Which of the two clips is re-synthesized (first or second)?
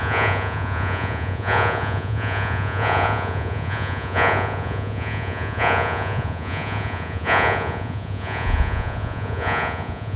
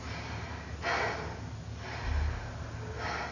first